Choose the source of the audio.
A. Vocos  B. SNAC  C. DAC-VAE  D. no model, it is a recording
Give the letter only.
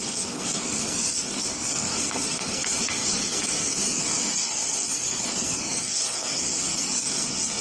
B